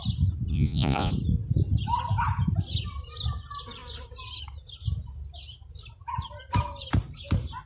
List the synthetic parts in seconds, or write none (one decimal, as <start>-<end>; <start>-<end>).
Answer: 0.5-1.1